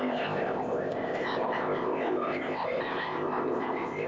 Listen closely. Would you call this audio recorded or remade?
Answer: remade